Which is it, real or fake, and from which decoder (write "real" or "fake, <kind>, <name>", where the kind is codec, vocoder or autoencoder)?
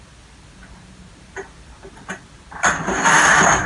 real